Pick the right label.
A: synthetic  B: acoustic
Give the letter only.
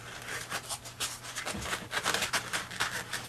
B